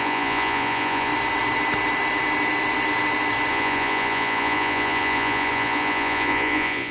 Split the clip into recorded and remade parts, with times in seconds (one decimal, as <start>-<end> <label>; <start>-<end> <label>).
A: 0.0-1.1 remade; 1.1-3.5 recorded; 3.5-6.9 remade